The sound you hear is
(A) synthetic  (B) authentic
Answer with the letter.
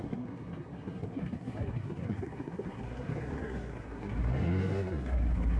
A